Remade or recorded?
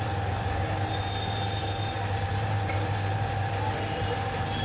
remade